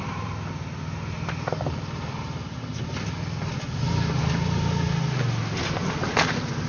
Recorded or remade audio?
recorded